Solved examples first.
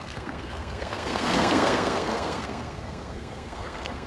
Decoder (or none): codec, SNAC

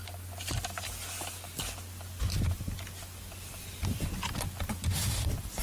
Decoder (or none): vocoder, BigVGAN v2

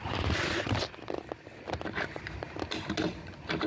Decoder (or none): none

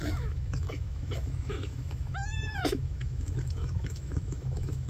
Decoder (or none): autoencoder, DAC-VAE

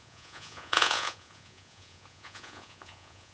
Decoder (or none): vocoder, Vocos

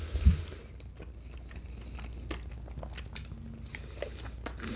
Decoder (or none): none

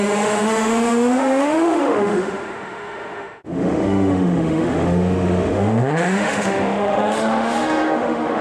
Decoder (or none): autoencoder, DAC-VAE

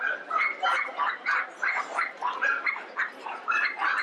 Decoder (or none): vocoder, BigVGAN v2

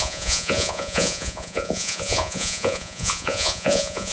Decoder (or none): vocoder, Vocos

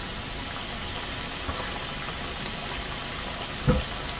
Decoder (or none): none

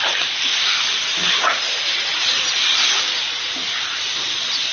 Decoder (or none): none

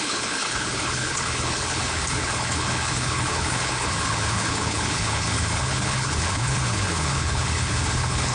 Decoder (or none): codec, HILCodec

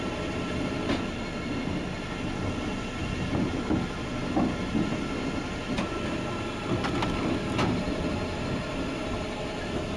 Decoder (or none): none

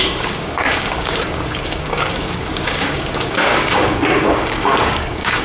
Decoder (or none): codec, DAC